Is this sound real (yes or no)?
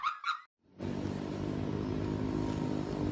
yes